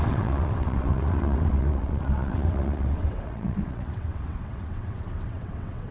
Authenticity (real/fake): fake